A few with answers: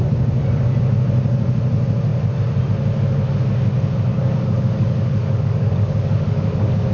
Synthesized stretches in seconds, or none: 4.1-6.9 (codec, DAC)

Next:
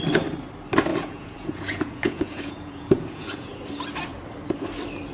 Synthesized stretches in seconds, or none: 0.9-3.5 (vocoder, Vocos)

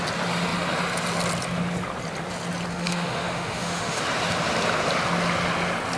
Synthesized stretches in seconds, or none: 2.7-4.0 (autoencoder, DAC-VAE)

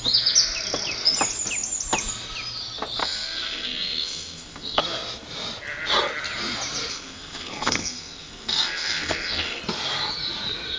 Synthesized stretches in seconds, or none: 3.0-4.8 (codec, SNAC); 6.9-9.6

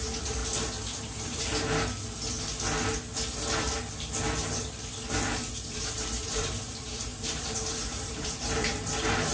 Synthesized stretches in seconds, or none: 0.0-0.4 (vocoder, BigVGAN v2); 1.0-1.5; 5.5-7.1; 7.7-9.3

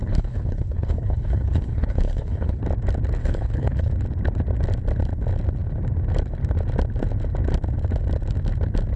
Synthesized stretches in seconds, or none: 0.0-2.6 (codec, HILCodec); 3.2-3.9